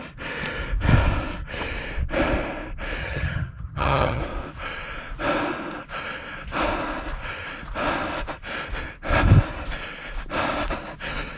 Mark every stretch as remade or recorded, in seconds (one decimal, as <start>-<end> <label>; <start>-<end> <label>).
0.0-3.0 recorded; 3.0-4.2 remade; 4.2-11.4 recorded